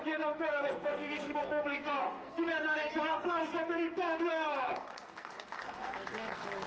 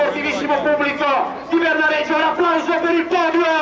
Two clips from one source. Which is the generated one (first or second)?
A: first